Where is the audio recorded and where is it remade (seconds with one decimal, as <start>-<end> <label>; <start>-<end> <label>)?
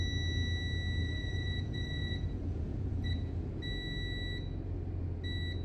0.0-1.0 recorded; 1.0-3.1 remade; 3.1-5.6 recorded